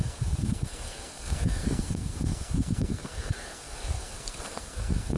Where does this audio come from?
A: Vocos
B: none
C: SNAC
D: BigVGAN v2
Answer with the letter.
C